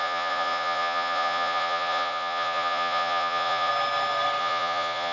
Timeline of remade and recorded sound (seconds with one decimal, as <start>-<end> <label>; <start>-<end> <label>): 0.0-3.7 remade; 3.7-4.4 recorded; 4.4-5.1 remade

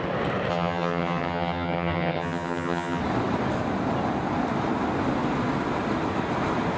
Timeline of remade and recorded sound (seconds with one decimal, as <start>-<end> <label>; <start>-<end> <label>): 0.0-0.5 recorded; 0.5-3.0 remade; 3.0-6.8 recorded

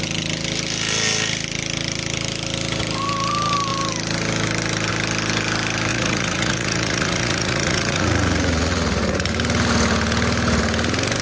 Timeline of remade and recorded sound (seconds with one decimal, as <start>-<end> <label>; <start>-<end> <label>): 0.0-5.9 recorded; 5.9-9.3 remade; 9.3-11.2 recorded

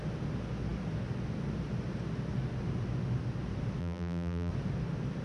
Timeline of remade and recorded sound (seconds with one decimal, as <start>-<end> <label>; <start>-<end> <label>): 0.0-3.8 recorded; 3.8-4.5 remade; 4.5-5.2 recorded

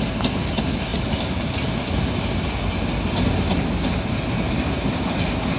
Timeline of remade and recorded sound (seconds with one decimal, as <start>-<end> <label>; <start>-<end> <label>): 0.0-5.6 recorded